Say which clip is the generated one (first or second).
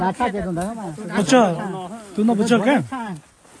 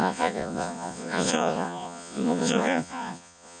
second